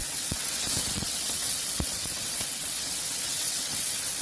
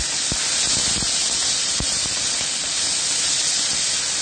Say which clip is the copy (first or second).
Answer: first